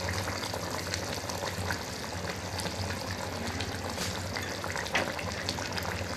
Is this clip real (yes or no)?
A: yes